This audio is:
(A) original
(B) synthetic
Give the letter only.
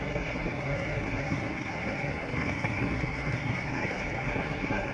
B